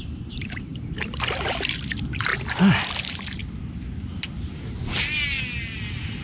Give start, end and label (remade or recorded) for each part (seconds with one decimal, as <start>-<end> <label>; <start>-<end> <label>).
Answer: 0.0-0.7 remade; 0.7-1.9 recorded; 1.9-2.3 remade; 2.3-3.0 recorded; 3.0-3.4 remade; 3.4-5.6 recorded; 5.6-6.2 remade